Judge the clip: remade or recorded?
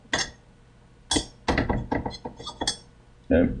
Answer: recorded